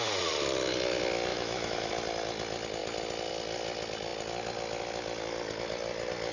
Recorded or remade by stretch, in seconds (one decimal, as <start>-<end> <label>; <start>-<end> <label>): 0.0-1.3 recorded; 1.3-1.9 remade; 1.9-6.3 recorded

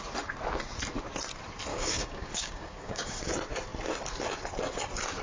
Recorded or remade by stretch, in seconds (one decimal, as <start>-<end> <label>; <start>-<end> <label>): 0.0-1.7 recorded; 1.7-3.2 remade; 3.2-5.2 recorded